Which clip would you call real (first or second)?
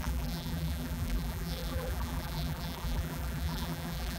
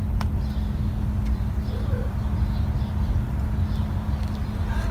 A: second